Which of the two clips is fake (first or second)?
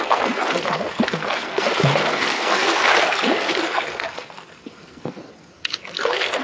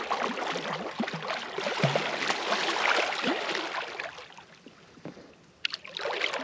first